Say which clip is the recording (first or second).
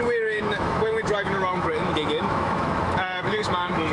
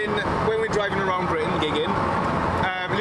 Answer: second